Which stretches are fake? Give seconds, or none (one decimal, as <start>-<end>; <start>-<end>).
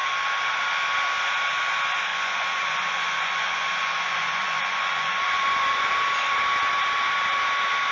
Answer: 2.1-5.9